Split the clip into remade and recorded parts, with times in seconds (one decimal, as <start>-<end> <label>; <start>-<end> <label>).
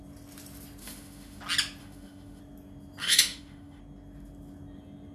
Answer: 0.0-0.8 recorded; 0.8-1.4 remade; 1.4-1.8 recorded; 1.8-2.4 remade; 2.4-3.0 recorded; 3.0-3.8 remade; 3.8-5.1 recorded